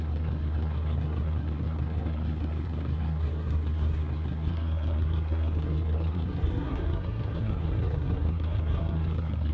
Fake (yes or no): yes